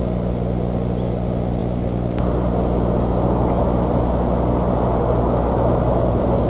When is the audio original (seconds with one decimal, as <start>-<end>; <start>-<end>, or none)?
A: 0.0-6.5